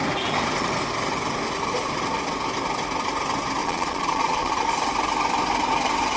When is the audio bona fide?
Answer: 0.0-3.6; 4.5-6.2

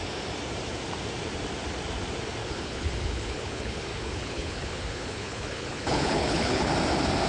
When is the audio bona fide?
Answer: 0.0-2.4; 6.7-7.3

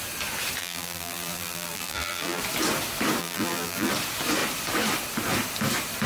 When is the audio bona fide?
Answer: 0.0-0.6; 2.4-3.2; 3.9-6.1

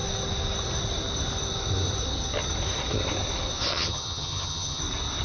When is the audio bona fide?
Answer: 0.0-3.7; 4.8-5.2

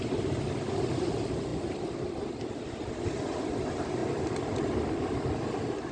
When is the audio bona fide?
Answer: 0.0-5.9

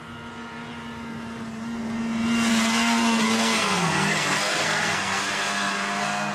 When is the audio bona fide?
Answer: 0.0-2.5

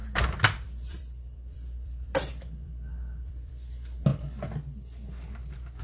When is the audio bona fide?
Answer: 4.1-5.8